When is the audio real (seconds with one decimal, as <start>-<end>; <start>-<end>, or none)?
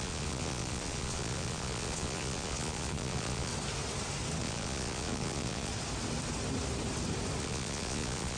3.5-4.4; 5.7-7.4